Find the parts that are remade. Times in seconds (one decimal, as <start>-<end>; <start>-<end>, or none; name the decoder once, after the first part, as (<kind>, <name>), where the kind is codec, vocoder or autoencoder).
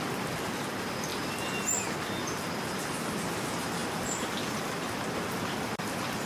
none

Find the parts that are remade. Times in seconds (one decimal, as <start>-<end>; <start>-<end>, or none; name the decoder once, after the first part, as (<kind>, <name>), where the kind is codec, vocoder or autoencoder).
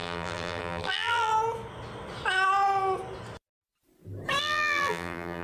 0.0-1.3 (vocoder, BigVGAN v2); 4.4-5.4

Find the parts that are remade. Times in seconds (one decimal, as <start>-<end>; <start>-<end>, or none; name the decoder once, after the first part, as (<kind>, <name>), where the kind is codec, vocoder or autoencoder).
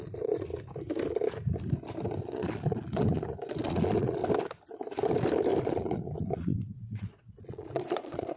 0.0-0.5 (vocoder, Vocos); 2.2-4.2; 5.6-8.4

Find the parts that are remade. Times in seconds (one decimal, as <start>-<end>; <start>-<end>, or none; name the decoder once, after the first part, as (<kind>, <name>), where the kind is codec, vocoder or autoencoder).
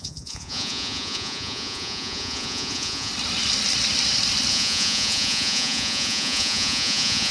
0.0-3.1 (vocoder, Vocos); 4.5-7.3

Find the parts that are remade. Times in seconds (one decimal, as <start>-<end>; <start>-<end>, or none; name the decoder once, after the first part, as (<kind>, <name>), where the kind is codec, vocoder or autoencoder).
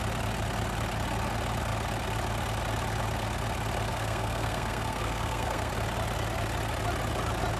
3.9-5.7 (codec, SNAC)